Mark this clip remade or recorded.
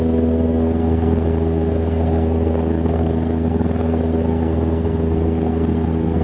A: remade